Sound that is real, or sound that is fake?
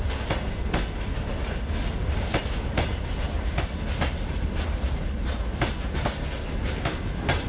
real